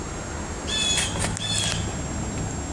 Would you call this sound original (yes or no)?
yes